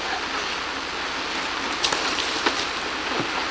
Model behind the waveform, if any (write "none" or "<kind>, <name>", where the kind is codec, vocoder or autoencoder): none